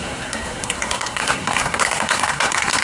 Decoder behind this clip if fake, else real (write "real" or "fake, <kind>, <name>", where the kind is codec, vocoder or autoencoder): fake, codec, SNAC